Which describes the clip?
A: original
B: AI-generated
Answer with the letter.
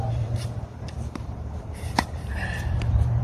B